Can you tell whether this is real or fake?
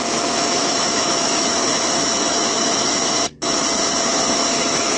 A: fake